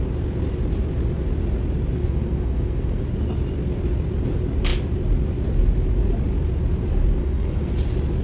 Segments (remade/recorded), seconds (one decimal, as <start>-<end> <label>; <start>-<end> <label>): 0.0-2.0 recorded; 2.0-3.0 remade; 3.0-7.2 recorded; 7.2-7.7 remade; 7.7-8.2 recorded